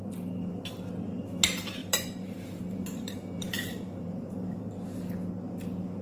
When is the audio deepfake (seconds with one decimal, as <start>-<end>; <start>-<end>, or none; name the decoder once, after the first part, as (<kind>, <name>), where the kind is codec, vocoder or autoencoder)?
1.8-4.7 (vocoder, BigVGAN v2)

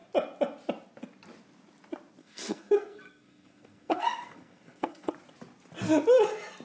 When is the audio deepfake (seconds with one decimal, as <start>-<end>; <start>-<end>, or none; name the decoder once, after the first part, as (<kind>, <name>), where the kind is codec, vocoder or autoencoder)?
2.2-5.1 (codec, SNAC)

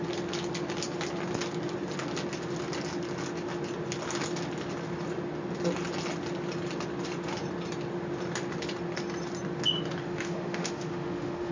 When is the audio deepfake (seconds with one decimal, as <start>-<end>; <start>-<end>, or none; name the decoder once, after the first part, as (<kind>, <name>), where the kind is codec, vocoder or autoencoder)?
10.0-11.5 (autoencoder, DAC-VAE)

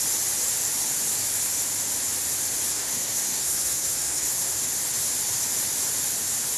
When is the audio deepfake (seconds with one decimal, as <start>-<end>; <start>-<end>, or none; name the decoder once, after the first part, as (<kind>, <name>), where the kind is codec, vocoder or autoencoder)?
2.7-4.6 (codec, SNAC)

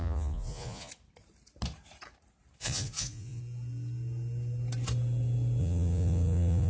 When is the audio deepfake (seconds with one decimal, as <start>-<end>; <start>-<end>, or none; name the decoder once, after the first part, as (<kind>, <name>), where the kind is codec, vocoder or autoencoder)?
0.0-0.9 (vocoder, Vocos); 2.6-3.4; 5.6-6.7